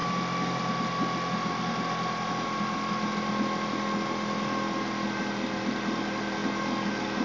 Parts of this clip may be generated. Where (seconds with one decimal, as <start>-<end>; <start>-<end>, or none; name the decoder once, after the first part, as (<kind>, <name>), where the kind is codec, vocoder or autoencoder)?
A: none